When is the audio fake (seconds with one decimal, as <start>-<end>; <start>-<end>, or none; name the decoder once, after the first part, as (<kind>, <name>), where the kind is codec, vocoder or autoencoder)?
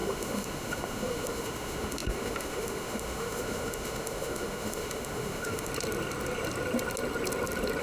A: 0.0-5.7 (autoencoder, DAC-VAE)